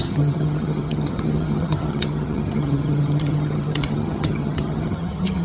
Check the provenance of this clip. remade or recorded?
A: remade